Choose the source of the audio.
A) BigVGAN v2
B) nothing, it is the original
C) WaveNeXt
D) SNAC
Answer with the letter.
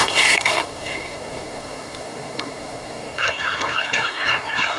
D